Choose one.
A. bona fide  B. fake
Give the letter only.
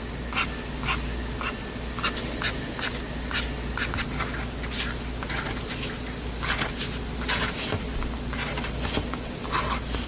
A